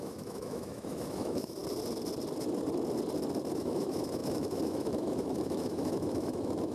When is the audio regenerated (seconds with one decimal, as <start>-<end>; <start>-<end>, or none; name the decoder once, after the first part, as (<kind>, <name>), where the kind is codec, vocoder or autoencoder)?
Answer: 0.0-1.6 (autoencoder, DAC-VAE); 3.5-6.7